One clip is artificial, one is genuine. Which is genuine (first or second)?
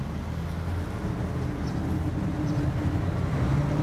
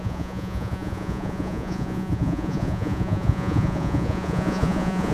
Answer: first